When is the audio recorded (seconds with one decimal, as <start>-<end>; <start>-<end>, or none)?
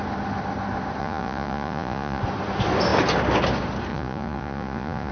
0.0-1.0; 2.2-3.9